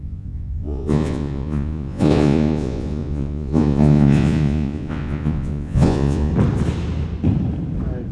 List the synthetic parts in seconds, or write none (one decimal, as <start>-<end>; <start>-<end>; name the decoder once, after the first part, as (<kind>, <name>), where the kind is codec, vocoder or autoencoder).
0.0-6.3 (vocoder, Vocos)